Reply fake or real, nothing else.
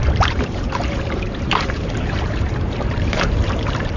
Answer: fake